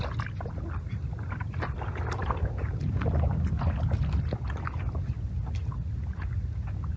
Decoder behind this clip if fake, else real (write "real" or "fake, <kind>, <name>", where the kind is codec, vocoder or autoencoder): real